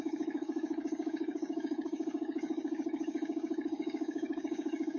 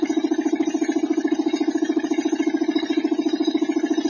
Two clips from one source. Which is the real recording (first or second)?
second